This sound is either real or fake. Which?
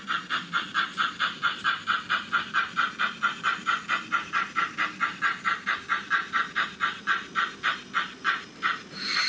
real